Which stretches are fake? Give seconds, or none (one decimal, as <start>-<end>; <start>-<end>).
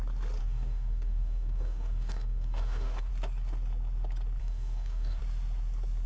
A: 0.4-3.1; 4.4-5.2